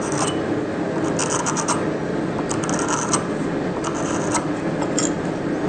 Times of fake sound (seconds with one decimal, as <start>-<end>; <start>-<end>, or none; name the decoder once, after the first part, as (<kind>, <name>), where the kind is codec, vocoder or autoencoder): none

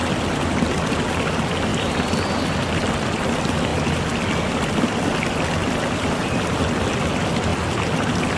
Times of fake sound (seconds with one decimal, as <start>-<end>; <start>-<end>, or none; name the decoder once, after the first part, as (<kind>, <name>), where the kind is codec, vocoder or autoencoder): 1.7-2.3 (vocoder, BigVGAN v2); 3.7-7.0; 7.5-8.0

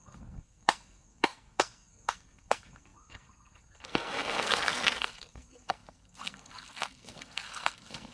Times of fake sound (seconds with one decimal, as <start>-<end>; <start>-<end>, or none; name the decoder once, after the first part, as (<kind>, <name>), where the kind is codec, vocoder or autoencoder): 0.0-8.1 (codec, SNAC)